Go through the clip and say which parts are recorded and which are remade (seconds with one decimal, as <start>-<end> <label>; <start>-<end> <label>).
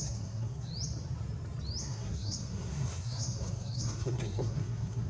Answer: 0.0-0.7 remade; 0.7-1.8 recorded; 1.8-5.1 remade